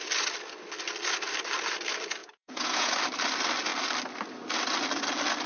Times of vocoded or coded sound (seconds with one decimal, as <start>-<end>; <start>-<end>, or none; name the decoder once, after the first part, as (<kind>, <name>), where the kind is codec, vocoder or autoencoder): 2.2-2.9 (vocoder, Vocos)